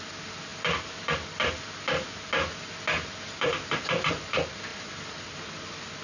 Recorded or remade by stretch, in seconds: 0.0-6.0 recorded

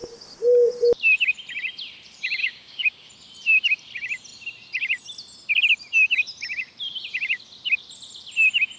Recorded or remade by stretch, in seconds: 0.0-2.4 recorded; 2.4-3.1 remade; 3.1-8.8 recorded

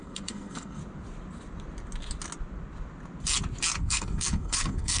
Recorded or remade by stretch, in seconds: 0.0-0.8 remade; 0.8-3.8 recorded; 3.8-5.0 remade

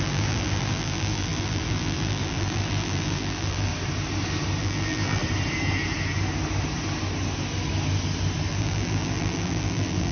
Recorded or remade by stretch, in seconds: 0.0-3.7 remade; 3.7-4.6 recorded; 4.6-5.2 remade; 5.2-8.5 recorded; 8.5-10.1 remade

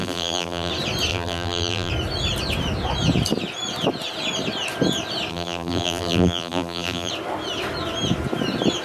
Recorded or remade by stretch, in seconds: 0.0-0.7 remade; 0.7-1.1 recorded; 1.1-1.9 remade; 1.9-5.3 recorded; 5.3-7.1 remade; 7.1-8.8 recorded